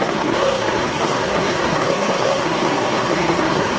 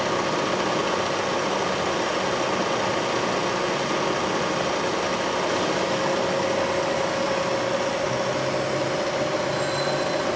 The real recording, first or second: second